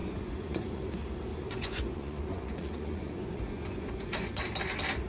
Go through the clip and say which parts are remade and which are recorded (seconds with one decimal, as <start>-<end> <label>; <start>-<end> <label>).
0.0-0.8 remade; 0.8-1.3 recorded; 1.3-4.4 remade; 4.4-5.1 recorded